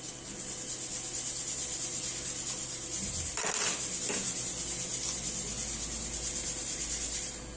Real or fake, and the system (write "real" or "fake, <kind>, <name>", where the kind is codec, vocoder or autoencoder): real